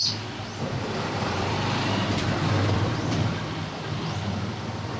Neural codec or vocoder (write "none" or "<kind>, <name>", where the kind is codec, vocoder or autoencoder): vocoder, BigVGAN v2